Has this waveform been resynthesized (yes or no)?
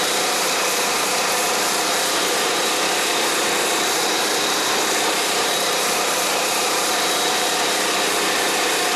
yes